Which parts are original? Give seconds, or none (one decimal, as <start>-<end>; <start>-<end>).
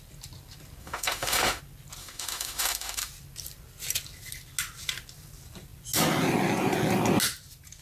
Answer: 0.0-0.8; 1.6-2.0; 3.1-7.8